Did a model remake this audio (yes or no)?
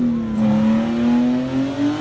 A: no